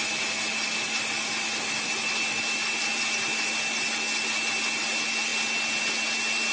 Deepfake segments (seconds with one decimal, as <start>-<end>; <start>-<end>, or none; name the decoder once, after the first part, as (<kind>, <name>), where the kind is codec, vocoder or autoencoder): none